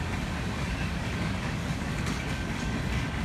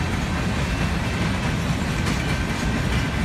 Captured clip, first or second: second